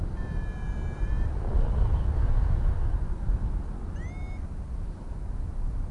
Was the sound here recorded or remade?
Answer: recorded